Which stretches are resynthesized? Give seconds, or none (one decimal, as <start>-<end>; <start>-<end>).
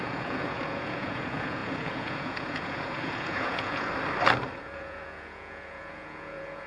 0.0-3.9; 4.6-6.7